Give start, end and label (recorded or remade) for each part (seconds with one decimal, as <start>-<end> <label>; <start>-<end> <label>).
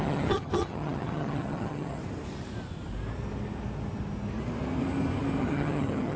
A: 0.0-2.0 remade; 2.0-5.4 recorded; 5.4-6.2 remade